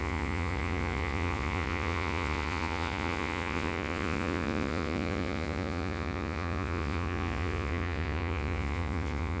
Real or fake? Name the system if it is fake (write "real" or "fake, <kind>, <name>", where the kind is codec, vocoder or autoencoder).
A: fake, vocoder, Vocos